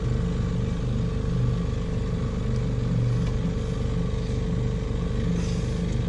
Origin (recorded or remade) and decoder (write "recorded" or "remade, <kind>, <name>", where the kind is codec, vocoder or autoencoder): recorded